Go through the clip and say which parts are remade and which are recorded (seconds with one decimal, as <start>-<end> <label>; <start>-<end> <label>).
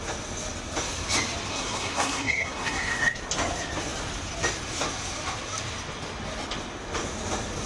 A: 0.0-1.5 recorded; 1.5-3.2 remade; 3.2-7.7 recorded